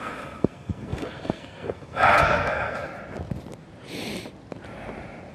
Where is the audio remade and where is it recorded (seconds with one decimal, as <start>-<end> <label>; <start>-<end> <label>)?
0.0-2.9 remade; 2.9-5.3 recorded